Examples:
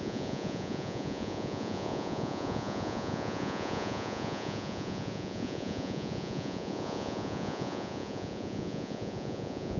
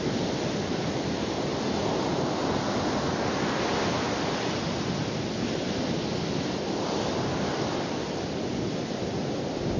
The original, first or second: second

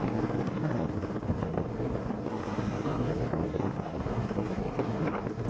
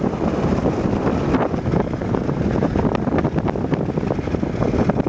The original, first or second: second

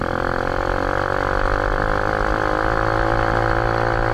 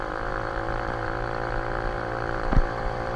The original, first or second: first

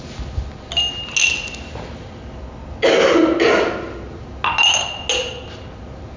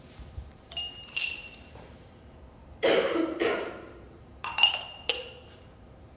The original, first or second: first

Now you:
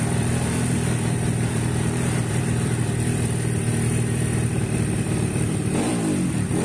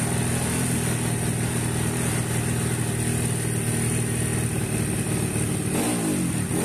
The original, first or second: second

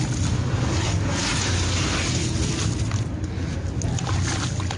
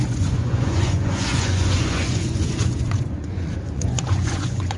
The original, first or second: first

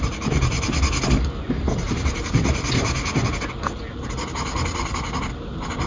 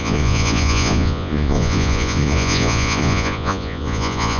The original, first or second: first